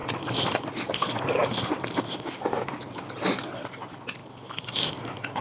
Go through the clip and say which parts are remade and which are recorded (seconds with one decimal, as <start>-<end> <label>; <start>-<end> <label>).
0.0-5.4 recorded